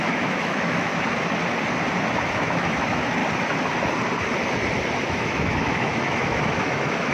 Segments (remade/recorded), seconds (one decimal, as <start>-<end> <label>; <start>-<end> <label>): 0.0-0.9 remade; 0.9-2.3 recorded; 2.3-3.2 remade; 3.2-5.1 recorded; 5.1-7.1 remade